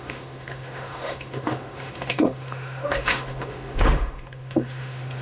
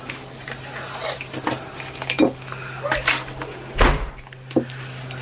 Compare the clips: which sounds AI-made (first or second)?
first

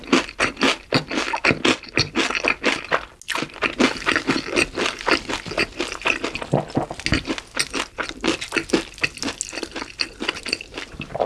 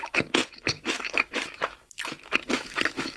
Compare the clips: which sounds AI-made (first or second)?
second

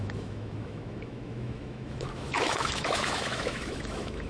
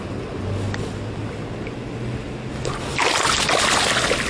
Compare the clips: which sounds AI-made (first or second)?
first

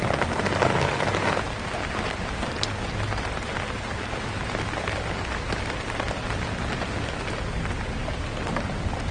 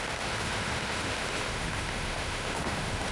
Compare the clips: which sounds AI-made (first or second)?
second